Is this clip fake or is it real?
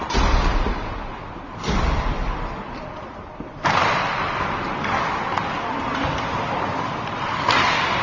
fake